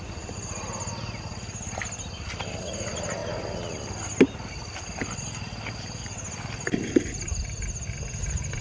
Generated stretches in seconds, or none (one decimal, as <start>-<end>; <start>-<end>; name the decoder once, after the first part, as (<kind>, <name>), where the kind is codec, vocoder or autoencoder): none

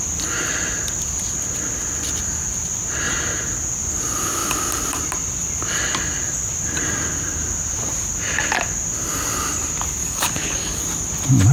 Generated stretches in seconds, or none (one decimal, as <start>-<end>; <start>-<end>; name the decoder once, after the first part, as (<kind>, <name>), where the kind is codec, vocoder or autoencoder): 10.0-10.8 (codec, DAC)

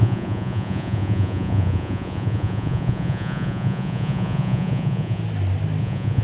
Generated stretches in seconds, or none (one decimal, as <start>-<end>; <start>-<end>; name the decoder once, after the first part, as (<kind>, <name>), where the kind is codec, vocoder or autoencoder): 0.0-5.2 (vocoder, Vocos); 5.8-6.2